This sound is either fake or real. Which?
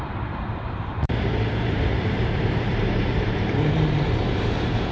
fake